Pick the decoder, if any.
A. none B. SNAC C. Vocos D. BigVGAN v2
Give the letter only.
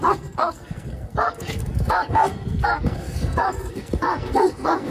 B